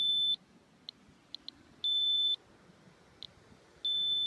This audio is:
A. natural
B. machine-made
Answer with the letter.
A